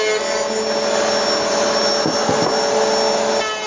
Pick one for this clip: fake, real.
real